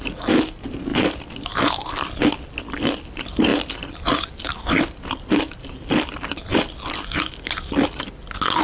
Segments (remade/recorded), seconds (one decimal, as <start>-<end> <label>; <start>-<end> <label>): 0.0-0.9 remade; 0.9-2.6 recorded; 2.6-6.5 remade; 6.5-8.6 recorded